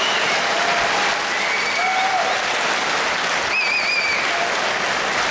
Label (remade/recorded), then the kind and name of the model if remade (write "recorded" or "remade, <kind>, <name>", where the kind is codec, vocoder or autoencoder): recorded